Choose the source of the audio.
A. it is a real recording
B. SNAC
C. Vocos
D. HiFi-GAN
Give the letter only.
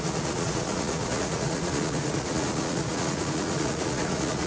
C